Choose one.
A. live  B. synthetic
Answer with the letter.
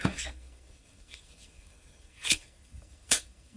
B